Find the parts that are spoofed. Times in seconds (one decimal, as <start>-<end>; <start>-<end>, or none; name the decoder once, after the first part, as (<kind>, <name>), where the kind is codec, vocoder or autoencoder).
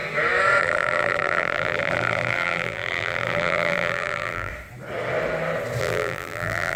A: 0.6-4.5 (vocoder, BigVGAN v2); 5.8-6.8